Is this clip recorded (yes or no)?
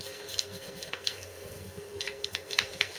no